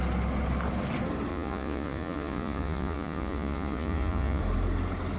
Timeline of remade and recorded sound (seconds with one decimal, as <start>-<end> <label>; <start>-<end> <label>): 0.0-1.3 recorded; 1.3-4.4 remade; 4.4-5.2 recorded